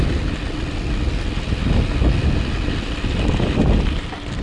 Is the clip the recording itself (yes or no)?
yes